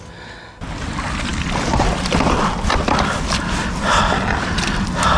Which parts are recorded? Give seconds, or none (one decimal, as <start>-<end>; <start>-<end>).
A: 0.0-5.2

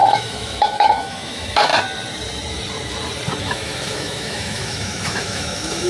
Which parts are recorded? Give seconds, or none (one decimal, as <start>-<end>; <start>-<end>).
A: 1.7-3.4